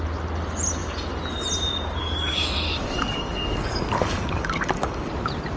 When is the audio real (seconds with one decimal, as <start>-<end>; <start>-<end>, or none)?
0.0-2.0; 5.1-5.6